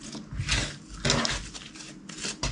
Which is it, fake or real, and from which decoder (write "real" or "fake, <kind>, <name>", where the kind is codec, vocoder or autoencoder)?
real